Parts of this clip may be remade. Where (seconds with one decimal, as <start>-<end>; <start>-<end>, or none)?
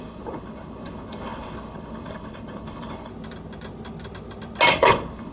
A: 0.0-3.1; 4.7-5.3